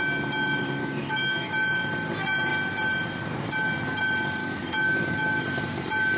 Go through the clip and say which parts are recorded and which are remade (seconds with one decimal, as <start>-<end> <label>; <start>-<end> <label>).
0.0-0.8 recorded; 0.8-1.5 remade; 1.5-4.4 recorded; 4.4-5.4 remade; 5.4-6.2 recorded